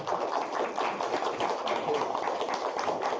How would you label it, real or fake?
real